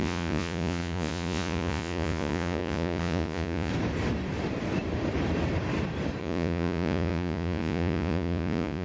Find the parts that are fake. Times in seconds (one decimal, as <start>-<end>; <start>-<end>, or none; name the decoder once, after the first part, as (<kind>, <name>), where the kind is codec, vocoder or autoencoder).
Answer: 0.0-3.7 (vocoder, Vocos); 6.2-8.8